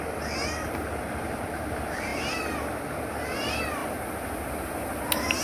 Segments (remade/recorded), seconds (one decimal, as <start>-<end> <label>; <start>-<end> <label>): 0.0-5.4 recorded

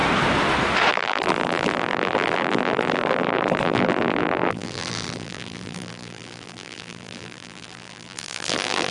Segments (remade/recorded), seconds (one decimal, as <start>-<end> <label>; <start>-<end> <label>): 0.0-0.9 recorded; 0.9-8.9 remade